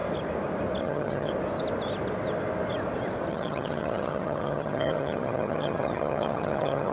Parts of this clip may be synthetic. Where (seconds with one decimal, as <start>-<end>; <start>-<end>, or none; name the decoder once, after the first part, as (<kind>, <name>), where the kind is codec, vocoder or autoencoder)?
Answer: 0.8-1.3 (vocoder, HiFi-GAN); 3.3-6.9